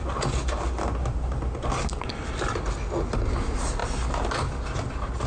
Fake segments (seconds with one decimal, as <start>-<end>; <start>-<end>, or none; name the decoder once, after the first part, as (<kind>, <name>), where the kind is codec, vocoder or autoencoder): none